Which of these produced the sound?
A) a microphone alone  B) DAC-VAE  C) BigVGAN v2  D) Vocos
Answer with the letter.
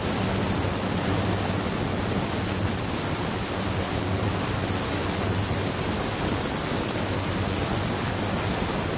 A